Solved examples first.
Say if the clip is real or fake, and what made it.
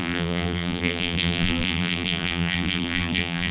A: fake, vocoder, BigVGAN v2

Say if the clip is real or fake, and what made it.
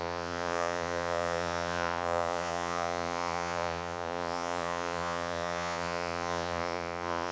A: fake, vocoder, Vocos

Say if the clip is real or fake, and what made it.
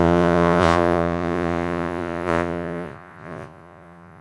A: fake, vocoder, Vocos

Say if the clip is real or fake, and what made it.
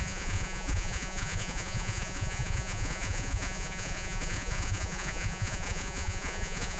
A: fake, vocoder, Vocos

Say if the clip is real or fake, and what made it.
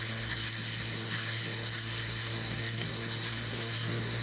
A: fake, codec, SNAC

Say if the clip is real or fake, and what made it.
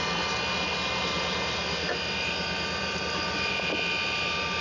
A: real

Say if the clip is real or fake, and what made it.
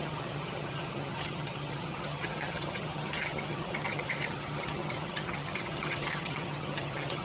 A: fake, vocoder, HiFi-GAN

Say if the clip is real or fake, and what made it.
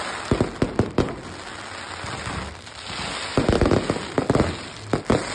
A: real